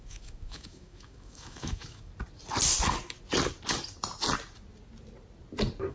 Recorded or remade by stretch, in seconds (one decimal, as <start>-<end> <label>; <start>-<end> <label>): 0.0-2.1 remade; 2.1-5.9 recorded